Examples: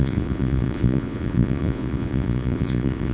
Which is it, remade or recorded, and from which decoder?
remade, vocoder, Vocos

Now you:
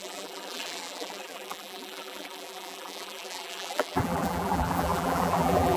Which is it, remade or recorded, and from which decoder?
remade, vocoder, BigVGAN v2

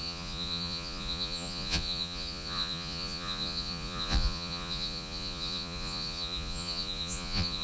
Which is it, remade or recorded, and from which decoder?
remade, vocoder, Vocos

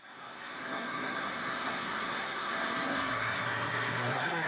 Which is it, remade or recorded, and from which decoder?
remade, codec, SNAC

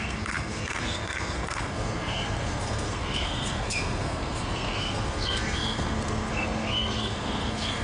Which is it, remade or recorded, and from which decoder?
remade, codec, SNAC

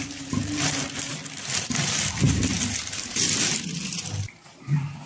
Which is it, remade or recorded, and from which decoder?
recorded